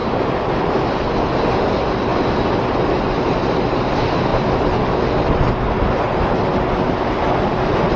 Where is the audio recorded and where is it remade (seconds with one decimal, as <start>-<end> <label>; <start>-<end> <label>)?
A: 0.0-8.0 recorded